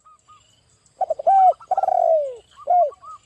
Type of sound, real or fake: real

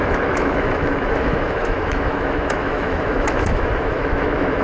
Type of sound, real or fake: fake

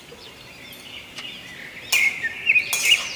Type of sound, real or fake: real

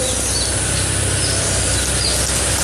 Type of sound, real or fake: real